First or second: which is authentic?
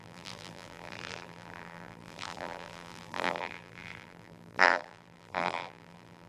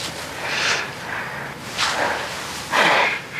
second